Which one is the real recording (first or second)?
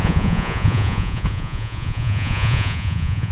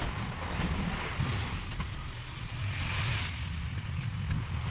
second